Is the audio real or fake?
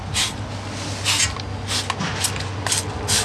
real